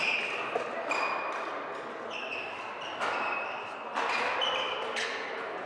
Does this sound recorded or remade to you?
recorded